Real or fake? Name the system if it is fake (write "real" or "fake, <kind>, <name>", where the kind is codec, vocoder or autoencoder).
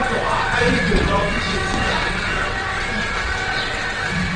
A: fake, vocoder, WaveNeXt